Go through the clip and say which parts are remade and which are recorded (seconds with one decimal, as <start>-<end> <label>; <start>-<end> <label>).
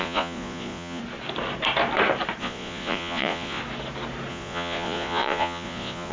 0.0-1.0 remade; 1.0-2.4 recorded; 2.4-3.6 remade; 3.6-4.3 recorded; 4.3-6.1 remade